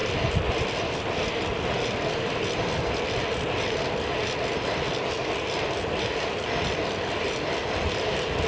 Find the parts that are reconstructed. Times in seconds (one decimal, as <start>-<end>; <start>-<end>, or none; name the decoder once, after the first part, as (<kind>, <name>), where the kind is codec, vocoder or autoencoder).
none